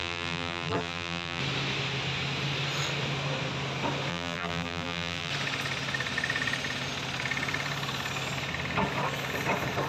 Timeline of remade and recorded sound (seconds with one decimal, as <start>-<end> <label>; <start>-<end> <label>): 0.0-1.4 remade; 1.4-4.1 recorded; 4.1-5.3 remade; 5.3-9.9 recorded